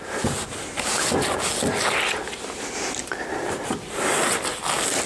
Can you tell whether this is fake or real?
real